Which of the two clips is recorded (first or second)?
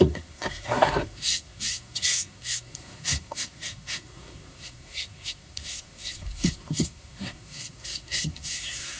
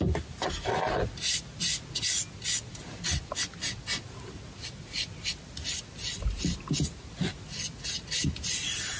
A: second